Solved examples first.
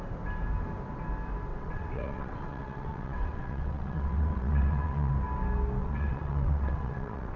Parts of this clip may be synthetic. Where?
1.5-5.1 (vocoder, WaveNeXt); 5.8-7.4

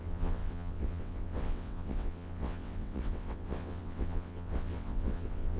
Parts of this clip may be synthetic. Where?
0.0-5.6 (vocoder, WaveNeXt)

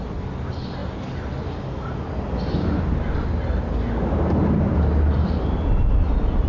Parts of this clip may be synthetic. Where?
none

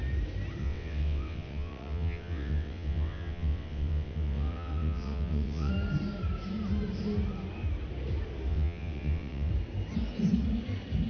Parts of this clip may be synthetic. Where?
0.6-5.7 (vocoder, WaveNeXt); 8.5-9.5

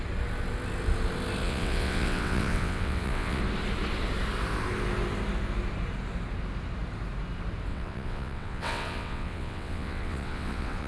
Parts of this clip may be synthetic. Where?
1.4-3.4 (vocoder, WaveNeXt); 7.7-10.9

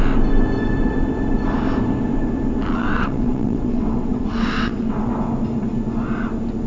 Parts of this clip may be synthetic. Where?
2.8-5.1 (vocoder, WaveNeXt)